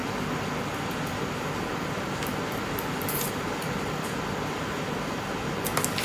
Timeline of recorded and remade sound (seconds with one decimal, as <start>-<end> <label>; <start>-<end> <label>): 0.0-6.0 recorded